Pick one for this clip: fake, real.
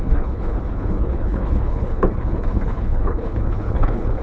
fake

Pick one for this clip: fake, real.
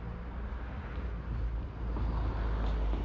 real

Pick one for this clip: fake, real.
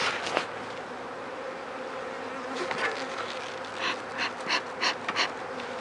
real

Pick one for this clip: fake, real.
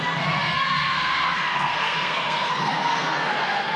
fake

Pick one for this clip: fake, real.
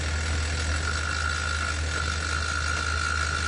real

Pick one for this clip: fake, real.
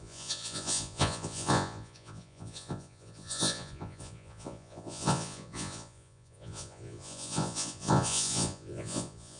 fake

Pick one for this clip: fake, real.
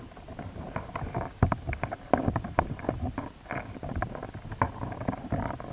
real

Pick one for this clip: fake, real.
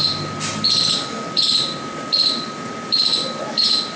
real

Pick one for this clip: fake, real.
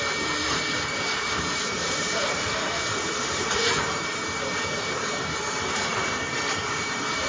fake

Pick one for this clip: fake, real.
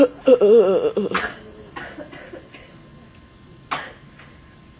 real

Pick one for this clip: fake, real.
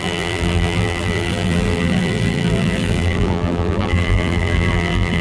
fake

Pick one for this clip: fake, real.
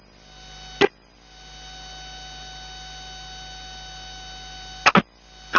real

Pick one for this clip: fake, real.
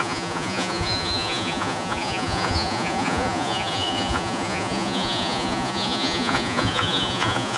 fake